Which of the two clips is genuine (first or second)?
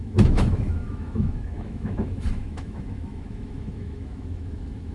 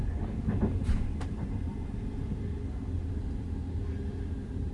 second